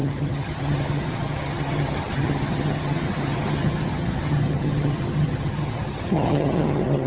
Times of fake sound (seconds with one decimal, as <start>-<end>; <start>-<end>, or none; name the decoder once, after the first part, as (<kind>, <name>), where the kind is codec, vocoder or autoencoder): 0.0-7.1 (vocoder, HiFi-GAN)